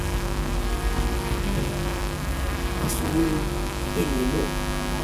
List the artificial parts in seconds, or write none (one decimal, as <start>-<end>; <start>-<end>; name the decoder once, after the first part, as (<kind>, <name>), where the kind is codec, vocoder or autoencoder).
0.0-3.9 (codec, SNAC)

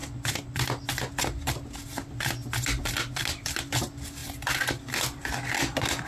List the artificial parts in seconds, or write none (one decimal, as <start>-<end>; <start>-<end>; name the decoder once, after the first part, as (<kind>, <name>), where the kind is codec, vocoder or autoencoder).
none

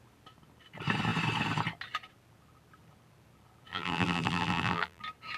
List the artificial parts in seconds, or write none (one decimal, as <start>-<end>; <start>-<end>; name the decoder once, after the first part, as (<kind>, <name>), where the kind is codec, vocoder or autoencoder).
3.7-5.0 (vocoder, BigVGAN v2)

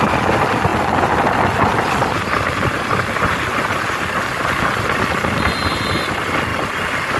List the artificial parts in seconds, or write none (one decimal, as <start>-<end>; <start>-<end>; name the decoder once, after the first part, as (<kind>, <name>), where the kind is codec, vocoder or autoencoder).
none